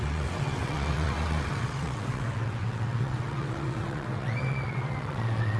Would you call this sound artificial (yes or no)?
yes